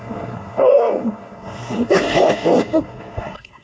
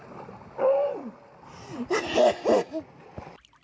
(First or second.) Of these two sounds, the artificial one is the first